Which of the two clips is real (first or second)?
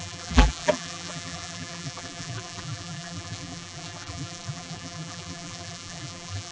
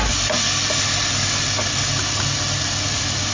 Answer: second